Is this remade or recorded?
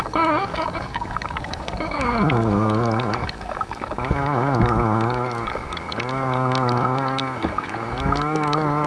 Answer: remade